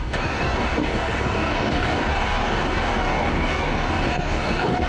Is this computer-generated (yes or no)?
yes